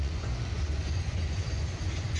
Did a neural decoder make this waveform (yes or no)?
yes